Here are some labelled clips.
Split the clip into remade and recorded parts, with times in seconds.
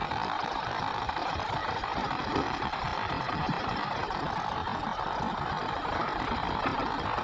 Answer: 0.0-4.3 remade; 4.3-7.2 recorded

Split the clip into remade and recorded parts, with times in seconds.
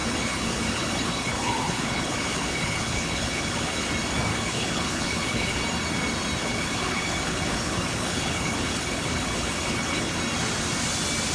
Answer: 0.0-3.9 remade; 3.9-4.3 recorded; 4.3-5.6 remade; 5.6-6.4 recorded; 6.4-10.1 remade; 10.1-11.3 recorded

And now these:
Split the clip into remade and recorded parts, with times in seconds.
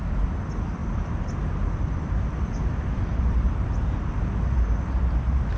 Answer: 0.0-0.8 recorded; 0.8-4.2 remade; 4.2-5.6 recorded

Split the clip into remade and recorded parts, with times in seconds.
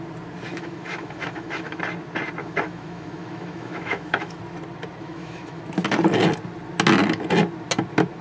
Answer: 0.0-0.5 recorded; 0.5-1.8 remade; 1.8-2.4 recorded; 2.4-4.4 remade; 4.4-5.0 recorded; 5.0-5.6 remade; 5.6-8.2 recorded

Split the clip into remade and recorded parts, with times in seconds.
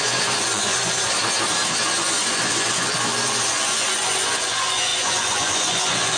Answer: 0.0-1.2 remade; 1.2-1.8 recorded; 1.8-6.2 remade